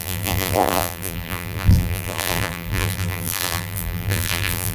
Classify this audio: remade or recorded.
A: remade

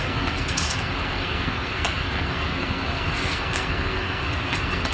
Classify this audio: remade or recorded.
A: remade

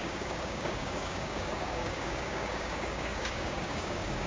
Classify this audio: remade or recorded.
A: remade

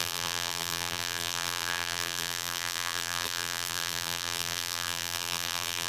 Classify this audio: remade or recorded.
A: remade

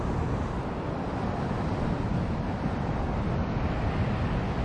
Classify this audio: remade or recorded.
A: recorded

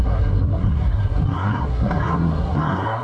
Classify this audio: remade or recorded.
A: remade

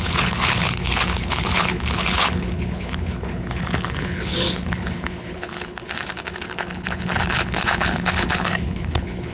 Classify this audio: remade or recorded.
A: remade